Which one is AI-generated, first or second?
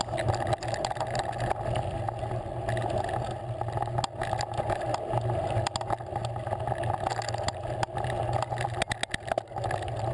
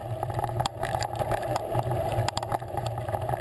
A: second